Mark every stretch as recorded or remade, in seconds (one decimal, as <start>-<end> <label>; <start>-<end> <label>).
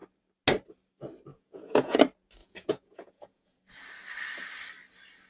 0.0-1.3 recorded; 1.3-2.0 remade; 2.0-2.4 recorded; 2.4-3.6 remade; 3.6-5.3 recorded